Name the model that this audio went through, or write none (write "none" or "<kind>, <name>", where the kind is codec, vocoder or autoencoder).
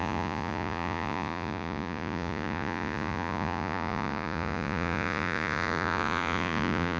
vocoder, Vocos